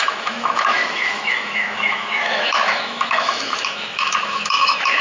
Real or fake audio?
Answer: fake